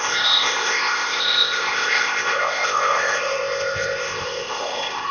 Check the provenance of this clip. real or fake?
fake